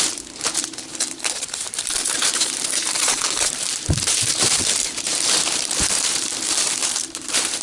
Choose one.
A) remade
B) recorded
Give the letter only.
A